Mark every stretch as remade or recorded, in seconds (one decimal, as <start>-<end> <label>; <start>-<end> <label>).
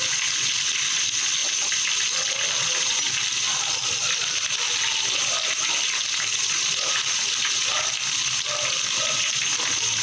0.0-10.0 recorded